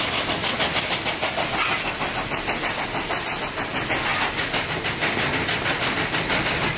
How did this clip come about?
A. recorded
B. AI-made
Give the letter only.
A